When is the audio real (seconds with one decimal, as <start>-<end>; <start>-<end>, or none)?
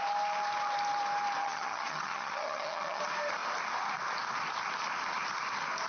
0.0-1.4; 3.0-5.9